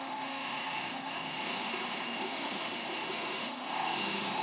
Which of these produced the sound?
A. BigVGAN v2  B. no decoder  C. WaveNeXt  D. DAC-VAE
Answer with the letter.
D